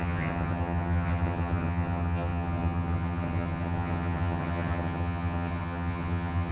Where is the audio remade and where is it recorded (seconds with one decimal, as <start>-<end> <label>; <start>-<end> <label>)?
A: 0.0-6.5 remade